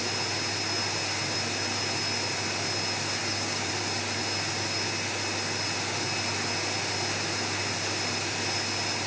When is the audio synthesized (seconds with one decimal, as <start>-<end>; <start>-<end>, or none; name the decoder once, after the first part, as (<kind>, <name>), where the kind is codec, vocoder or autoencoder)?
3.2-3.7 (codec, DAC)